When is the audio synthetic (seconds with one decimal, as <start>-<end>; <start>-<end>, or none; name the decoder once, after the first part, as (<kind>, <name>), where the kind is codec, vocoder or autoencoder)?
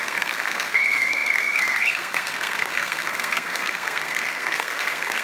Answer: 0.0-5.2 (codec, SNAC)